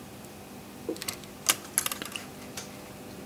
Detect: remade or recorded recorded